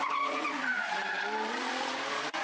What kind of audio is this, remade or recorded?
remade